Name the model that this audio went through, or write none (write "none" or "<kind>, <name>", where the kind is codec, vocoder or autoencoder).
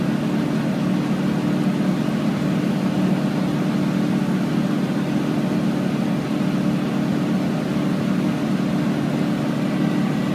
none